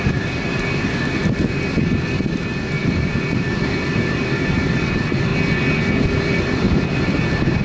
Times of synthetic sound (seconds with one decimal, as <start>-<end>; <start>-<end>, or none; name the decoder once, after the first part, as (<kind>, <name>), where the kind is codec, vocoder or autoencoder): 0.0-1.2 (vocoder, BigVGAN v2); 1.9-5.3; 6.4-7.6